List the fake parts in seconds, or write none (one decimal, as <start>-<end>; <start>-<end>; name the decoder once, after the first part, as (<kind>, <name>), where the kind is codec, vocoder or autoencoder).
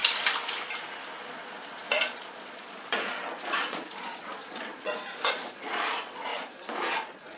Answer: 1.2-7.4 (vocoder, Vocos)